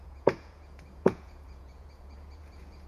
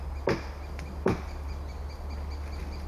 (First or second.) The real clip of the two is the second